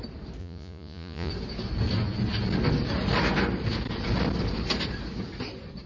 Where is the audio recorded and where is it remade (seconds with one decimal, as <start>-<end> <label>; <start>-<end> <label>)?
0.0-0.4 recorded; 0.4-1.3 remade; 1.3-5.9 recorded